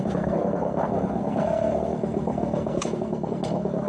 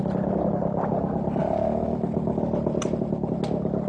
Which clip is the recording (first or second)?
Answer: second